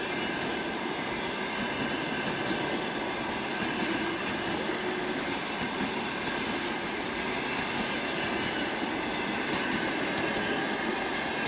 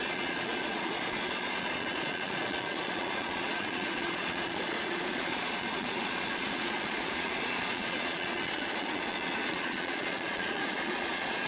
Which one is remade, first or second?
second